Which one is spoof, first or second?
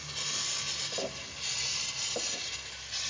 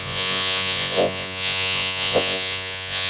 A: second